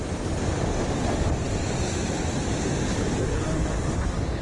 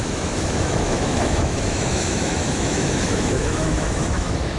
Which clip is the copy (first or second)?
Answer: second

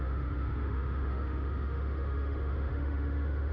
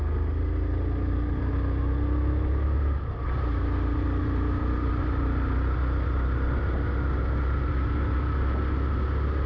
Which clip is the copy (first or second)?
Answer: first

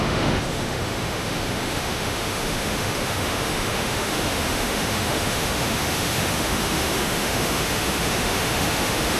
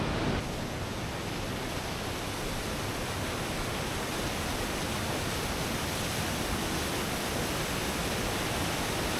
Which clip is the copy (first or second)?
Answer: first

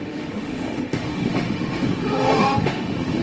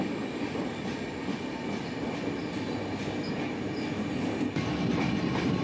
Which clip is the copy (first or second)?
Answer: first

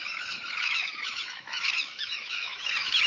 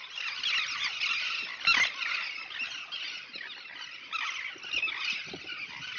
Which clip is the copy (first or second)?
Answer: first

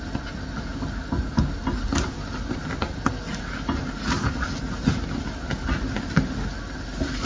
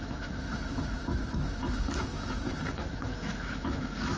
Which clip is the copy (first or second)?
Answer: second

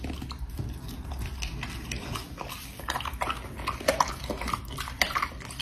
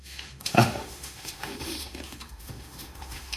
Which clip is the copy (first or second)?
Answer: second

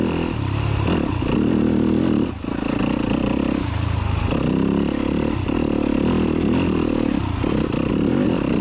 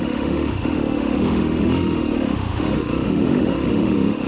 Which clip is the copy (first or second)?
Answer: second